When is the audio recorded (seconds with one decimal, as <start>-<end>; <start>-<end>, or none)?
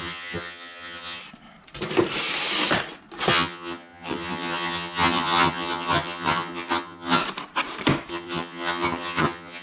1.2-3.3; 7.2-8.1